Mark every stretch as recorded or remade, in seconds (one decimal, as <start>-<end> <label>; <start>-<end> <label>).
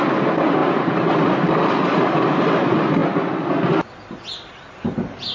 0.0-0.6 recorded; 0.6-2.5 remade; 2.5-5.3 recorded